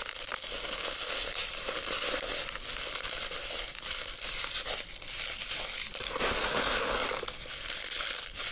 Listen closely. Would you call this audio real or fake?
real